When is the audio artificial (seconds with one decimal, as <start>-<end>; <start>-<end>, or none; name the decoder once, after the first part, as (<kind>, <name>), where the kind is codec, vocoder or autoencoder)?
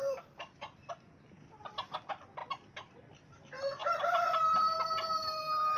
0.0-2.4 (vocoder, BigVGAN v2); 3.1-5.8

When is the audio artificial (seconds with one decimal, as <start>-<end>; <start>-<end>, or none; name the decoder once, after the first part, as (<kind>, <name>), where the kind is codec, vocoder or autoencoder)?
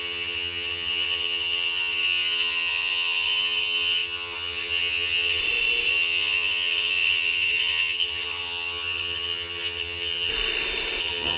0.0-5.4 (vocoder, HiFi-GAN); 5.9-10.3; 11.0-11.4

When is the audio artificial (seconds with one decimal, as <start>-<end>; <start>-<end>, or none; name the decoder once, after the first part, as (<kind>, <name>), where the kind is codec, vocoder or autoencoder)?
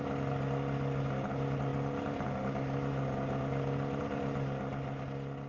none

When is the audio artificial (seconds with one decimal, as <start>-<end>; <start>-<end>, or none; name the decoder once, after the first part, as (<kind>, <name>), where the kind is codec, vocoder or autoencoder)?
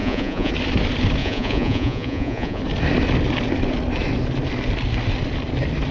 0.0-0.5 (vocoder, Vocos); 1.2-2.6